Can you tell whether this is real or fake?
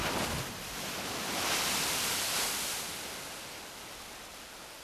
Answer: real